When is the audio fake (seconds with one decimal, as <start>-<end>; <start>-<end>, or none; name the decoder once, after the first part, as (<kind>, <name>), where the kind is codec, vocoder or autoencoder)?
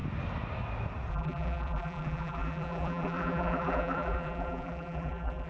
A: 1.1-5.5 (vocoder, BigVGAN v2)